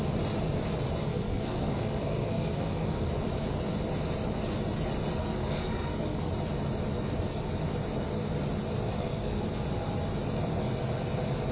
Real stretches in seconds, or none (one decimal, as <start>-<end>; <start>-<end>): 0.0-1.1; 3.1-5.2; 6.3-8.9; 9.4-11.5